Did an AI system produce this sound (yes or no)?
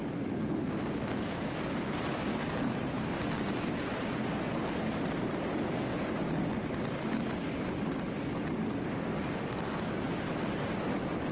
no